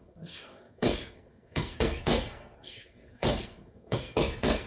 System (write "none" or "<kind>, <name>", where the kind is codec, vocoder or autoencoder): codec, SNAC